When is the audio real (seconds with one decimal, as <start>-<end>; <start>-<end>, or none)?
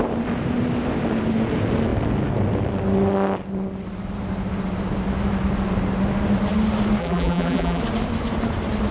0.0-7.0; 7.8-8.9